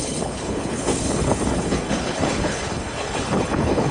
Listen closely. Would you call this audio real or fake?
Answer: fake